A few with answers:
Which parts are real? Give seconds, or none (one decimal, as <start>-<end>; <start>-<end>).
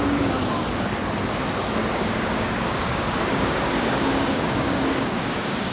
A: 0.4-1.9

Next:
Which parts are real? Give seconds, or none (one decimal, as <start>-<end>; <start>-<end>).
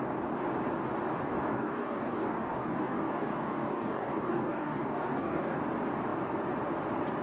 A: 0.0-1.3; 5.6-7.2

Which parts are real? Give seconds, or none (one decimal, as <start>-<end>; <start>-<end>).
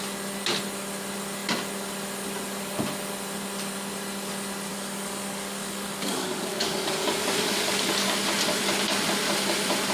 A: 0.0-4.7; 7.9-9.9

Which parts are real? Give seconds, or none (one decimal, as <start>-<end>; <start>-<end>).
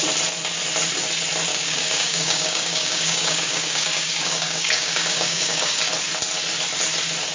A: 0.0-1.5; 5.9-7.3